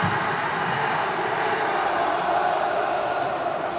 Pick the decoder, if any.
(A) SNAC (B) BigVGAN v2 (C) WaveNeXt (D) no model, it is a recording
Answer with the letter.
D